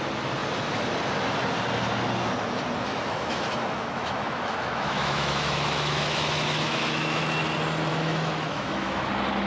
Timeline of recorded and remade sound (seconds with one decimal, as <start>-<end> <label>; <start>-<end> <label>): 0.0-2.9 recorded; 2.9-7.2 remade; 7.2-7.9 recorded; 7.9-9.1 remade; 9.1-9.5 recorded